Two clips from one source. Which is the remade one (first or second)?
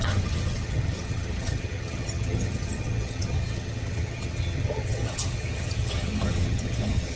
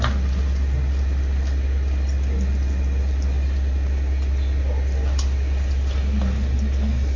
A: first